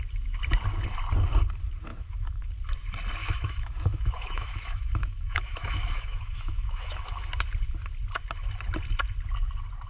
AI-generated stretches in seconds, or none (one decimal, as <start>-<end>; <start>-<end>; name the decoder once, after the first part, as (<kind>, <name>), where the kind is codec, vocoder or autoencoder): 1.9-2.5 (autoencoder, DAC-VAE); 3.2-7.3